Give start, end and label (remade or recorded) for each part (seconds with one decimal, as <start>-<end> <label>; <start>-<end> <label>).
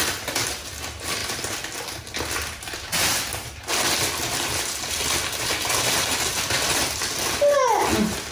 0.0-8.3 recorded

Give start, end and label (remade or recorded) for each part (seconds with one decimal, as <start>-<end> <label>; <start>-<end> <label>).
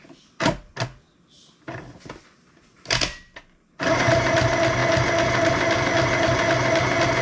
0.0-7.2 recorded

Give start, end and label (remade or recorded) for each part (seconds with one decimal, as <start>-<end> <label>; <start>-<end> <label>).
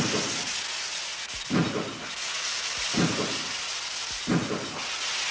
0.0-5.3 recorded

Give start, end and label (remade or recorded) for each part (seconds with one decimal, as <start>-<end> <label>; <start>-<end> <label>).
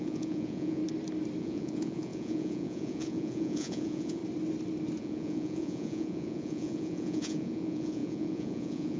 0.0-0.8 remade; 0.8-1.4 recorded; 1.4-4.2 remade; 4.2-5.0 recorded; 5.0-9.0 remade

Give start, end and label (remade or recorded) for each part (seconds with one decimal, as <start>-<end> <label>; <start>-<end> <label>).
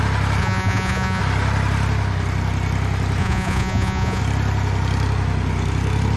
0.0-0.4 recorded; 0.4-1.2 remade; 1.2-3.2 recorded; 3.2-4.2 remade; 4.2-6.2 recorded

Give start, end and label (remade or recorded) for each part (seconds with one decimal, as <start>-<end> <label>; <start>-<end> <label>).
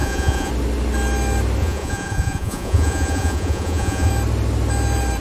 0.0-0.5 remade; 0.5-1.6 recorded; 1.6-4.1 remade; 4.1-5.2 recorded